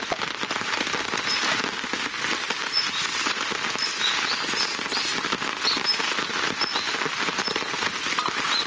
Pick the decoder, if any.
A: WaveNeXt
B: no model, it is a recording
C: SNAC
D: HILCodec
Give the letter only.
B